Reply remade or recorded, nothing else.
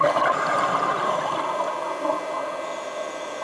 recorded